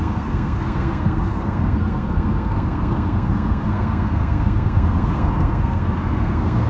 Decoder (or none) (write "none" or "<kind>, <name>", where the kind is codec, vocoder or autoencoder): codec, SNAC